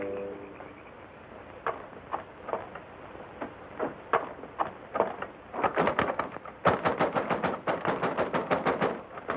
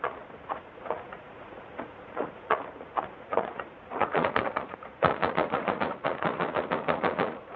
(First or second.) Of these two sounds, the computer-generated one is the second